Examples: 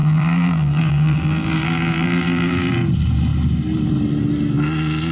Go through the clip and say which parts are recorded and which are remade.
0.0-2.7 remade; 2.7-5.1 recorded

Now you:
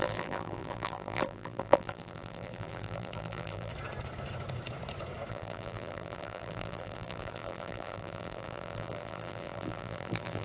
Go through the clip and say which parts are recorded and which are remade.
0.0-3.7 remade; 3.7-5.3 recorded; 5.3-10.4 remade

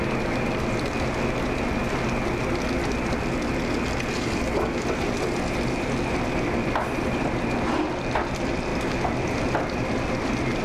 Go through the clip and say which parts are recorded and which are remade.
0.0-10.6 recorded

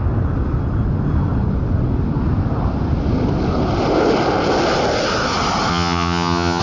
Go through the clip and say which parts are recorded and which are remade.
0.0-5.7 recorded; 5.7-6.6 remade

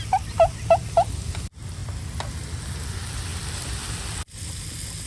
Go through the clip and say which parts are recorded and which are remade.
0.0-5.1 recorded

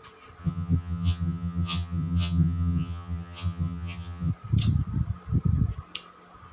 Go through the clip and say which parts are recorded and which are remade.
0.0-0.4 recorded; 0.4-4.3 remade; 4.3-6.5 recorded

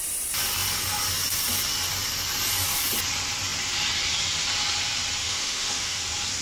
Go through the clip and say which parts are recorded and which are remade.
0.0-5.2 recorded; 5.2-6.0 remade; 6.0-6.4 recorded